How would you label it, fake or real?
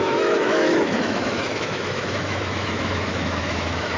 fake